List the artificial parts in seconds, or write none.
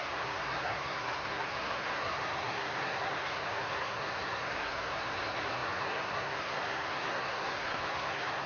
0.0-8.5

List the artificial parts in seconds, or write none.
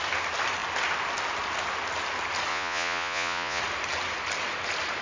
2.5-3.6